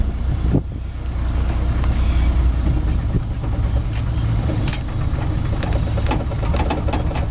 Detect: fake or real real